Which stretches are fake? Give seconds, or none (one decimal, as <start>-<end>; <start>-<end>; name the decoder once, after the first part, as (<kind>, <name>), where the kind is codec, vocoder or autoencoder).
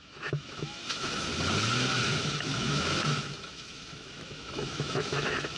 0.0-1.3 (autoencoder, DAC-VAE); 2.2-5.6